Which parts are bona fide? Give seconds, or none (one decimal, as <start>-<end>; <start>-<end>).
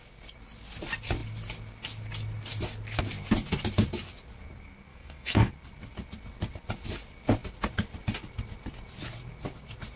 0.0-4.9; 5.5-10.0